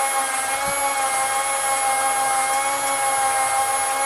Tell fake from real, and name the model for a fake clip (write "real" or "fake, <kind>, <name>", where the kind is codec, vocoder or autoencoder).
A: real